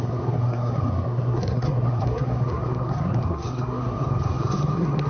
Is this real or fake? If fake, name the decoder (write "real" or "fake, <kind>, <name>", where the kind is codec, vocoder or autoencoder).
fake, codec, SNAC